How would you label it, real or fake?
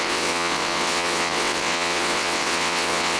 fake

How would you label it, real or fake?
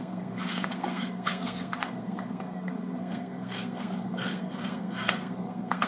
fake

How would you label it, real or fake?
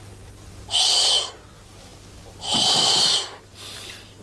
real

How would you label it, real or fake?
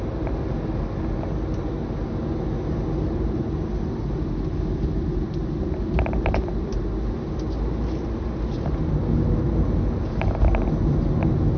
real